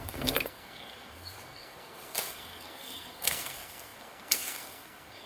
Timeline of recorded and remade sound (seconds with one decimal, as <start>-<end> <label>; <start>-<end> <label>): 0.0-5.3 remade